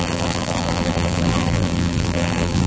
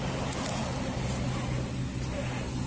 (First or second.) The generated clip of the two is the first